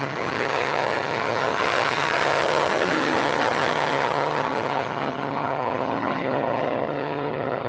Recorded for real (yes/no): no